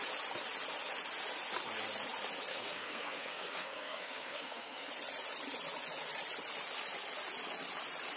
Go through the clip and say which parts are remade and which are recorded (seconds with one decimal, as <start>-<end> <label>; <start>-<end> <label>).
0.0-2.5 recorded; 2.5-4.9 remade; 4.9-8.2 recorded